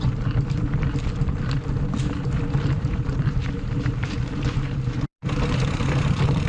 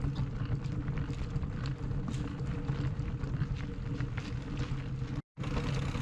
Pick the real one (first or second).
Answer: second